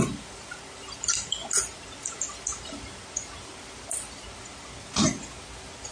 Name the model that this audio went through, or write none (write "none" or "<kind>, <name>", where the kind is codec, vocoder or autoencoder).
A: none